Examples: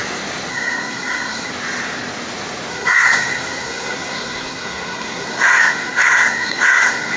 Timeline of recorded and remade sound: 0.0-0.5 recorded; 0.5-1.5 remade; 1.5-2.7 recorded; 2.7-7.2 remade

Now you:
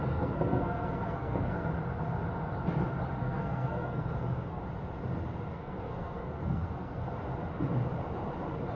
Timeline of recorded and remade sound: 0.0-1.7 remade; 1.7-3.2 recorded; 3.2-4.6 remade; 4.6-5.5 recorded; 5.5-7.1 remade; 7.1-8.8 recorded

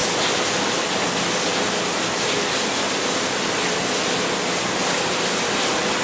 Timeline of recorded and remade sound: 0.0-6.0 recorded

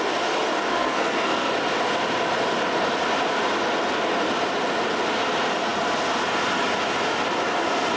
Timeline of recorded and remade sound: 0.0-0.7 recorded; 0.7-1.5 remade; 1.5-8.0 recorded

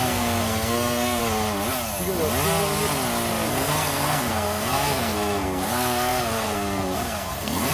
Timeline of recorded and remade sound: 0.0-1.2 remade; 1.2-3.5 recorded; 3.5-7.7 remade